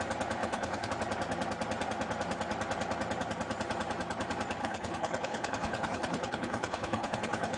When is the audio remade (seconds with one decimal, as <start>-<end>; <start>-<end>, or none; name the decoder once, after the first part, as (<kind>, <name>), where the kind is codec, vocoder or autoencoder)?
0.4-0.9 (codec, HILCodec); 4.6-7.6

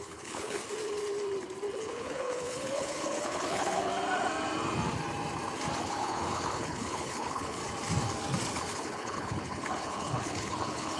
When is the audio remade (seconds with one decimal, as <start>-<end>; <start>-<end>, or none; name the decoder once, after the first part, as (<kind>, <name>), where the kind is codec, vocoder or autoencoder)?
0.0-0.6 (codec, HILCodec); 1.8-3.9; 5.8-7.6; 8.7-11.0

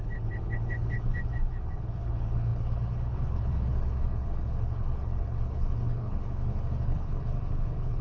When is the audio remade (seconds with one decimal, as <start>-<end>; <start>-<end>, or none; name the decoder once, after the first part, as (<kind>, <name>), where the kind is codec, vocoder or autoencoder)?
0.0-8.0 (codec, HILCodec)

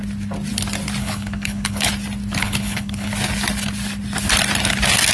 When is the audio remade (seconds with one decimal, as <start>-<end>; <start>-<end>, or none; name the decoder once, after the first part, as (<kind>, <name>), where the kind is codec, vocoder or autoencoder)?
1.0-1.9 (codec, HILCodec); 2.4-3.1

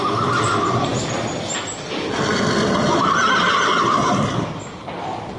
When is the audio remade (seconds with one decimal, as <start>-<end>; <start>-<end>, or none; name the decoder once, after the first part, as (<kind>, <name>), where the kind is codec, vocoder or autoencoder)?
none

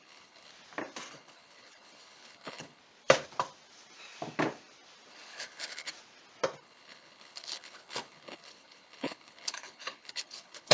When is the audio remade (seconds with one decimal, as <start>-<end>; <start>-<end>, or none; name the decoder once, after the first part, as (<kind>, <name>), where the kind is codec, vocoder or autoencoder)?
0.0-0.5 (codec, HILCodec); 1.1-2.8; 5.1-5.9; 6.6-10.7